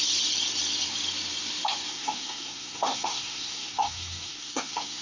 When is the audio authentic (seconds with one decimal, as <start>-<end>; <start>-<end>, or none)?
0.0-1.9